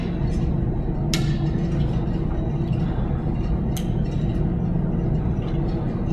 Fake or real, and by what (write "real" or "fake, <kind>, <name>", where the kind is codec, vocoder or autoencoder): real